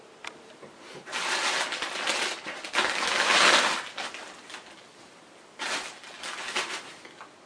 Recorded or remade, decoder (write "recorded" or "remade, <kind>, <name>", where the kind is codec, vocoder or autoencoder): recorded